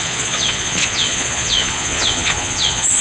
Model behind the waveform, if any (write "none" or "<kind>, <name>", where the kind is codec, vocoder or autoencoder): vocoder, Vocos